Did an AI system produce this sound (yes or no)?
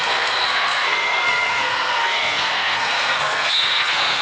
yes